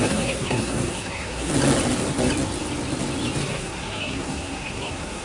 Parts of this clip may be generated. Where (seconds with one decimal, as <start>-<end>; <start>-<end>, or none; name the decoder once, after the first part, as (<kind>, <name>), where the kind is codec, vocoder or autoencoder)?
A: 0.0-1.5 (codec, SNAC); 3.4-5.2